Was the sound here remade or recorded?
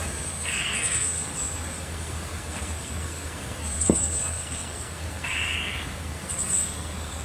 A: remade